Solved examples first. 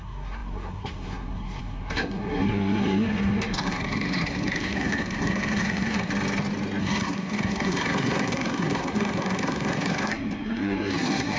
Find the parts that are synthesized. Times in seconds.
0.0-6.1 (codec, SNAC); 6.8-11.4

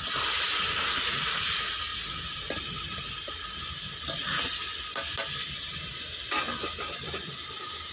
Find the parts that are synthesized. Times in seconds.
none

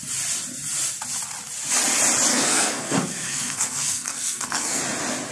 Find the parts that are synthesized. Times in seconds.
2.3-4.8 (codec, SNAC)

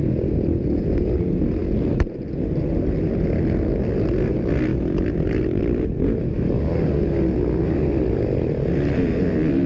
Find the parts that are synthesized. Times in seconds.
none

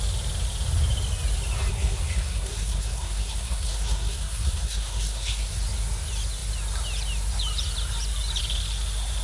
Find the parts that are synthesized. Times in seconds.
1.7-5.5 (codec, SNAC)